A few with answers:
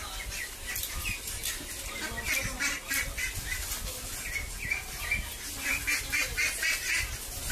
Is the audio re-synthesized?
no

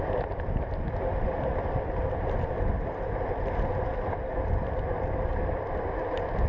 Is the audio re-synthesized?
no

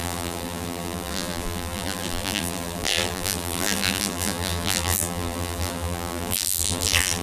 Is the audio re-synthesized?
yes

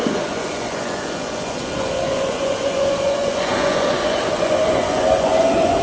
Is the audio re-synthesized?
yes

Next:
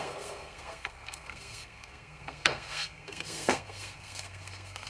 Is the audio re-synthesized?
yes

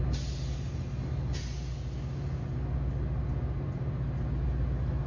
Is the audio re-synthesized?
no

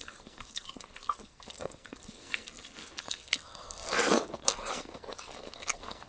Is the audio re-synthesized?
yes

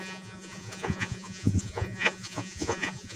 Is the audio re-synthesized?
yes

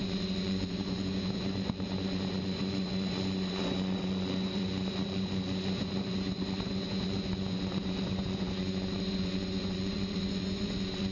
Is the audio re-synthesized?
yes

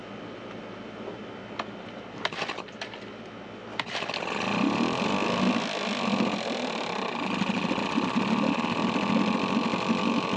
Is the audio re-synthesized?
no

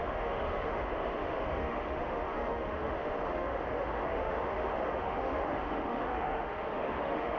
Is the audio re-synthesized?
yes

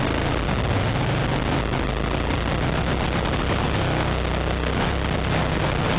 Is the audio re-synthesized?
no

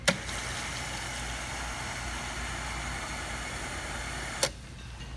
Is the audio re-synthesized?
no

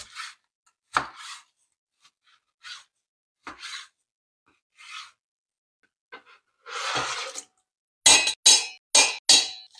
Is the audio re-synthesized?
no